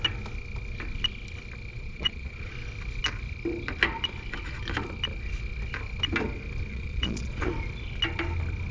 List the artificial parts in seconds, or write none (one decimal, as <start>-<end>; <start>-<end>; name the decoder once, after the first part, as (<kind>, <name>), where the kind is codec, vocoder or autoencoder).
1.7-2.5 (vocoder, Vocos); 6.7-7.5